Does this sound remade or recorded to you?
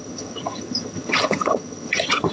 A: remade